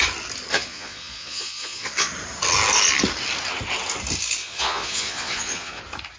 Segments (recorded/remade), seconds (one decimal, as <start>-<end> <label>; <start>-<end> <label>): 0.0-0.5 recorded; 0.5-2.1 remade; 2.1-4.4 recorded; 4.4-5.8 remade; 5.8-6.2 recorded